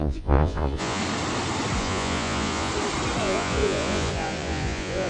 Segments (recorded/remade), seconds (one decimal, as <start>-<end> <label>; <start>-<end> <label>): 0.0-1.0 remade; 1.0-1.8 recorded; 1.8-2.7 remade; 2.7-3.2 recorded; 3.2-5.1 remade